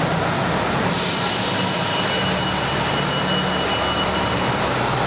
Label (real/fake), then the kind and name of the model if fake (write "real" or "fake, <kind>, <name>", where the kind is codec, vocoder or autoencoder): real